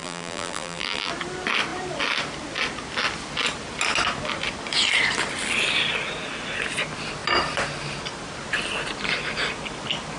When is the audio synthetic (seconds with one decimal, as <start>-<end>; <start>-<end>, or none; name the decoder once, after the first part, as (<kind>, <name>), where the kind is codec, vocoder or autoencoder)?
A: 0.0-1.1 (vocoder, BigVGAN v2)